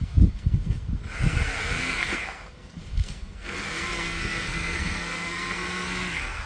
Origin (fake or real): fake